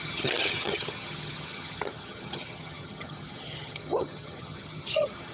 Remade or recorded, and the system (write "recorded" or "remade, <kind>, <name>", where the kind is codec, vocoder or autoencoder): remade, vocoder, HiFi-GAN